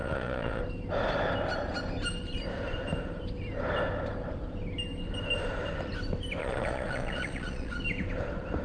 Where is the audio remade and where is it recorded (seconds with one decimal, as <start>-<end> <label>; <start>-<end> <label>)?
0.0-0.6 remade; 0.6-6.4 recorded; 6.4-7.8 remade; 7.8-8.6 recorded